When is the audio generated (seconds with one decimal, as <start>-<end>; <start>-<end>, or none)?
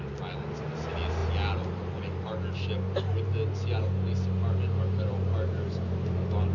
none